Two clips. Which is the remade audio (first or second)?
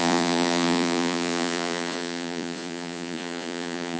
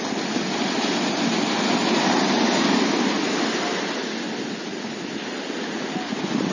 first